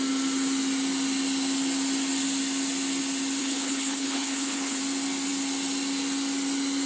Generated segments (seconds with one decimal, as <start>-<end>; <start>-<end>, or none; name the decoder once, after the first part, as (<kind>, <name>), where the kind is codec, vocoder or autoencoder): 3.4-4.8 (codec, HILCodec)